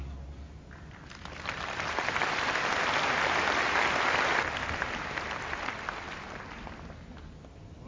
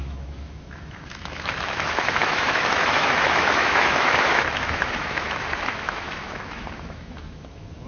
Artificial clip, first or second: second